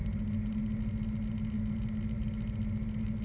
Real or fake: real